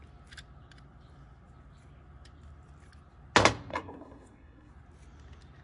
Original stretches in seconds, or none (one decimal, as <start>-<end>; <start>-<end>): 0.0-3.7; 4.7-5.6